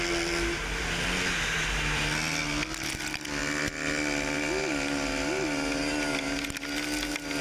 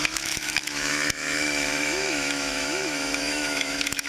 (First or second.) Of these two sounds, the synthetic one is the second